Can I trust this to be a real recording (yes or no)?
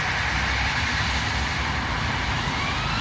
yes